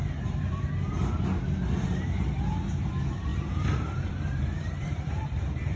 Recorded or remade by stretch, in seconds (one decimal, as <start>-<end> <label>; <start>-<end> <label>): 0.0-3.3 recorded; 3.3-5.8 remade